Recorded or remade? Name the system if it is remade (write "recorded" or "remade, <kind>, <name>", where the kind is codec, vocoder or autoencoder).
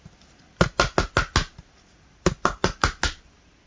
recorded